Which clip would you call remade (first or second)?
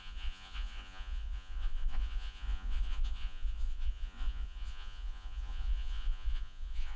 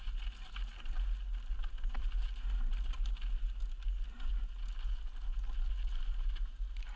first